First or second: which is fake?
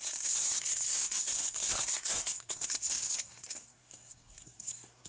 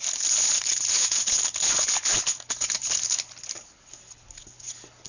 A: first